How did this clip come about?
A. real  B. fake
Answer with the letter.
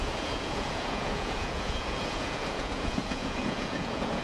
B